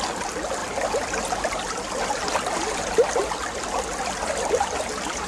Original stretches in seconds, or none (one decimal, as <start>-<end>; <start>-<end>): 0.0-5.3